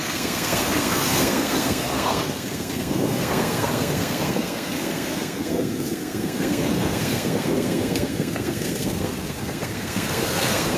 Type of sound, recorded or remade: remade